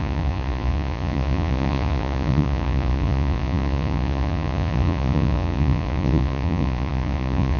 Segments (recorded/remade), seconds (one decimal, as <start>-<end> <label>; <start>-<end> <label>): 0.0-7.6 remade